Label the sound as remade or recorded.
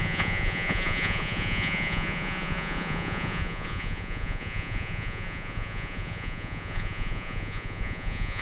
remade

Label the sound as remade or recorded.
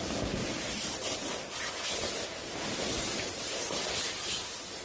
recorded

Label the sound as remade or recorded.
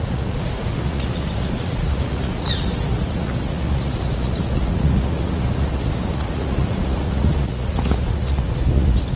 remade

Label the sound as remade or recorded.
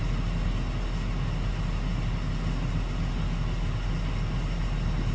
recorded